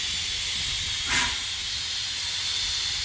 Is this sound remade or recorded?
recorded